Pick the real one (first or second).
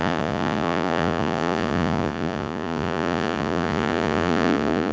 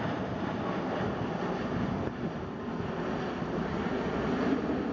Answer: second